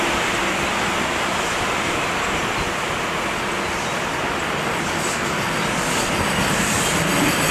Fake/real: real